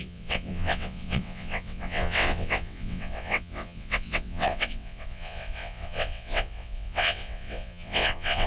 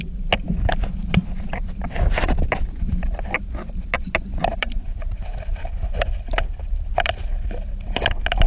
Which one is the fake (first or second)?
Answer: first